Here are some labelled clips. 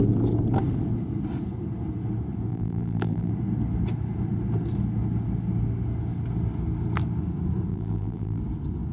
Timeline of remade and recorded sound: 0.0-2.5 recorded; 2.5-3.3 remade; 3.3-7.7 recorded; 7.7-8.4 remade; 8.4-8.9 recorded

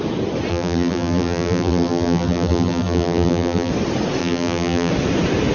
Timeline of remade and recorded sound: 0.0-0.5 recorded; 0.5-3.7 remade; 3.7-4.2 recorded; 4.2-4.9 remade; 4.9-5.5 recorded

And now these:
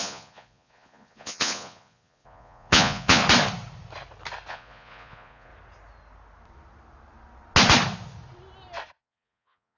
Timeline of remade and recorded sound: 0.0-3.2 remade; 3.2-4.5 recorded; 4.5-5.5 remade; 5.5-9.0 recorded; 9.0-9.8 remade